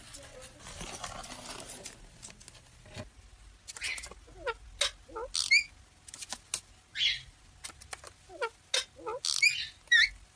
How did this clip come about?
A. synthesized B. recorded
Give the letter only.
B